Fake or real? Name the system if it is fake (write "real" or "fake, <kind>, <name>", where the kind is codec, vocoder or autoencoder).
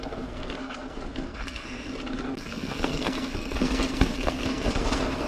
fake, codec, SNAC